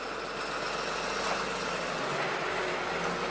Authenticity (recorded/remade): recorded